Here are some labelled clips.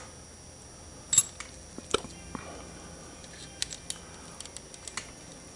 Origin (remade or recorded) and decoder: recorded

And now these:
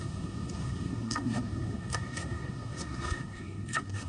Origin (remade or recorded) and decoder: remade, codec, SNAC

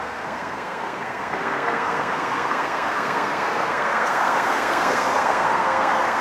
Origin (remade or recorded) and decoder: remade, codec, SNAC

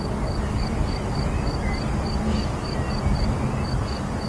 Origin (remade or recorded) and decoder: recorded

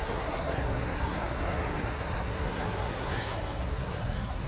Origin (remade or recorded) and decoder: remade, codec, SNAC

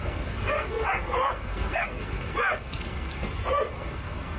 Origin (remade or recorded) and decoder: remade, codec, SNAC